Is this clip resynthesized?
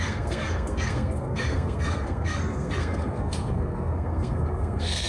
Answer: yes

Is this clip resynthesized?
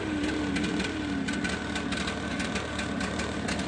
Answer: no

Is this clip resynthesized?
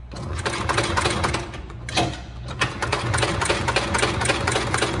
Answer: yes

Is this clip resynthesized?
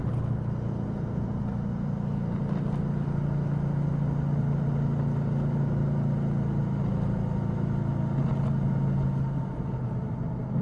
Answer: no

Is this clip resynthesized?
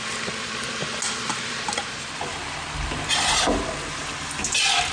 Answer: no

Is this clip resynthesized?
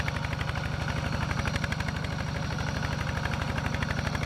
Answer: no